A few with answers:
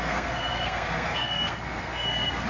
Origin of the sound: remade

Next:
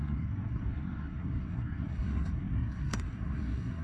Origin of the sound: remade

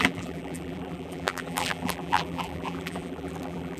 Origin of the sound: remade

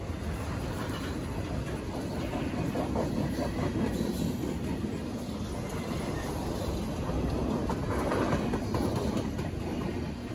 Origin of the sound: recorded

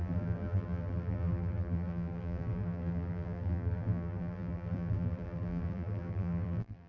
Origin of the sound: remade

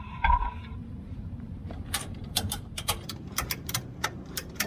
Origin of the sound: remade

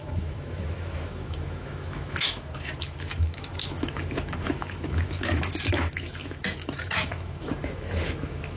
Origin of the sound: remade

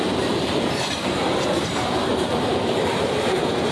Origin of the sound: remade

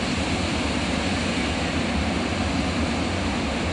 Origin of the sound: remade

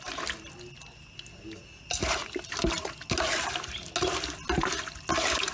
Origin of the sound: recorded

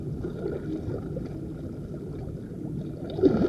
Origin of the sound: recorded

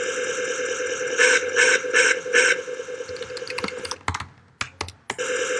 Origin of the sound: recorded